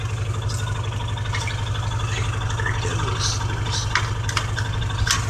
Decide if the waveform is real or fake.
real